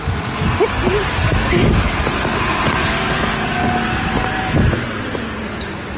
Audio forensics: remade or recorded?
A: recorded